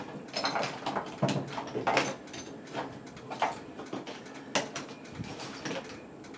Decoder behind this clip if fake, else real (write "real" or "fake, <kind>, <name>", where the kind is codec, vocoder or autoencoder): real